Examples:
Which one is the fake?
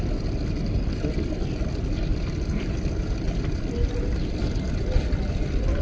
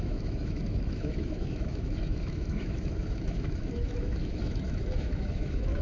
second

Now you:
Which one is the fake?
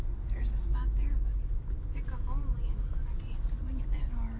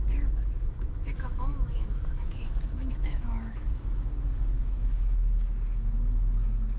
second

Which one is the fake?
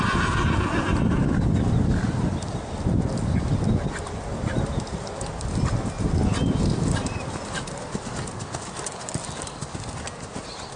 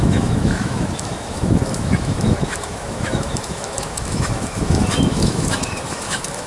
second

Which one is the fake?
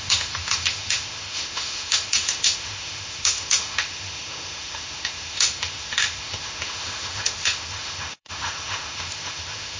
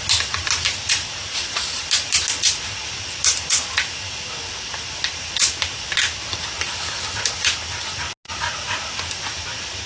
first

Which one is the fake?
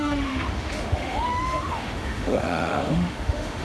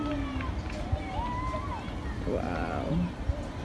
first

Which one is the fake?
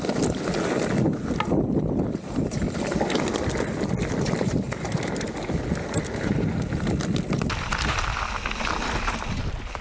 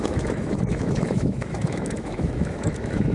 second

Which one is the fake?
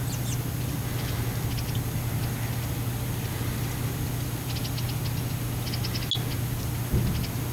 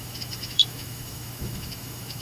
second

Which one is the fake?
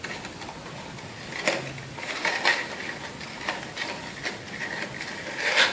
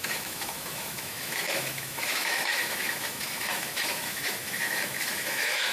second